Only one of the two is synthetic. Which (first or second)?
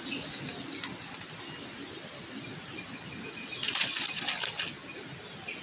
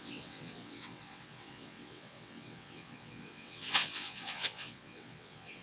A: second